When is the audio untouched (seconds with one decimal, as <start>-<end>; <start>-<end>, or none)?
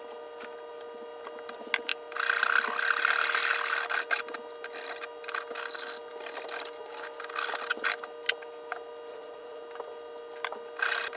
0.0-9.1; 9.6-11.2